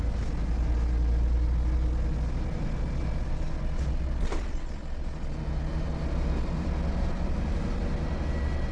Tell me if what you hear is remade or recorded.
recorded